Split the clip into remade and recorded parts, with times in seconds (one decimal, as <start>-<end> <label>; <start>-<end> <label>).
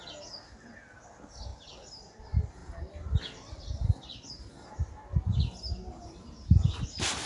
0.0-1.5 recorded; 1.5-2.2 remade; 2.2-5.9 recorded; 5.9-7.3 remade